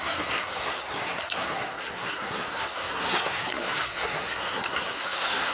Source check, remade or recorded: remade